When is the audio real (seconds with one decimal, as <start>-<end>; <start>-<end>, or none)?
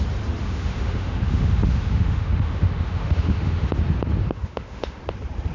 0.0-0.4; 3.7-4.2; 5.0-5.5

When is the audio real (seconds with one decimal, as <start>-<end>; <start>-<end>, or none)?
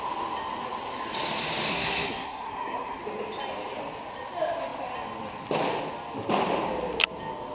0.0-1.7; 3.0-7.5